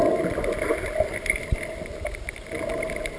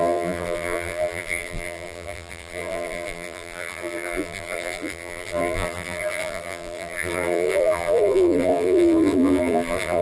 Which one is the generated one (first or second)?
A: second